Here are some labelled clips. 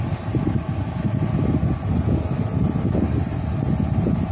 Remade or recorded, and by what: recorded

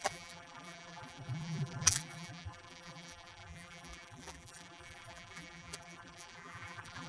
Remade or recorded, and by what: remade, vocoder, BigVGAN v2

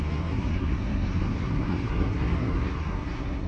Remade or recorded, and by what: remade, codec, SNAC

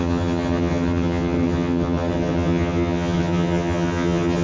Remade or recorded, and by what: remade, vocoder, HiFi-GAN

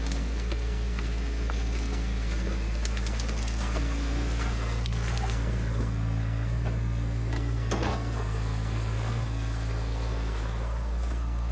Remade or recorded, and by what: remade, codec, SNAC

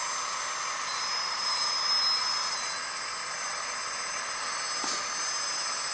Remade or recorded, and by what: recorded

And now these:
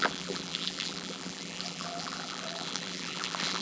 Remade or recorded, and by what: remade, vocoder, BigVGAN v2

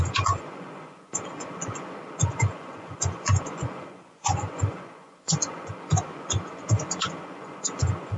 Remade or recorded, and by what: remade, vocoder, Vocos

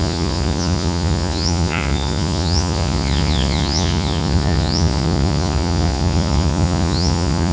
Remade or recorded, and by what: remade, vocoder, Vocos